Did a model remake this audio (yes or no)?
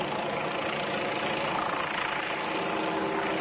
no